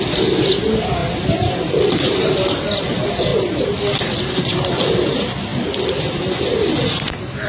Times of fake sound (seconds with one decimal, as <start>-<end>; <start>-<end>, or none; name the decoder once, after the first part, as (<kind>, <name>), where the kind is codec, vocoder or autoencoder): 3.3-3.8 (vocoder, BigVGAN v2)